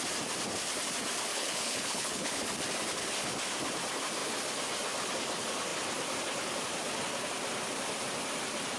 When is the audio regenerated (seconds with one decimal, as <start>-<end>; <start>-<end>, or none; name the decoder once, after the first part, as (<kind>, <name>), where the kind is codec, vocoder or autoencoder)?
1.3-2.4 (codec, HILCodec)